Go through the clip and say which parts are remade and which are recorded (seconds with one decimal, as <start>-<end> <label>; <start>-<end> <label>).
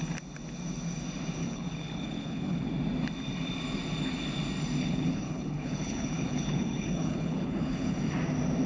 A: 0.0-1.4 recorded; 1.4-2.7 remade; 2.7-4.8 recorded; 4.8-8.0 remade; 8.0-8.7 recorded